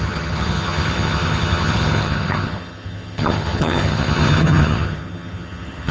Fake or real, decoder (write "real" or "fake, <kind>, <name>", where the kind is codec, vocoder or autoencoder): fake, vocoder, HiFi-GAN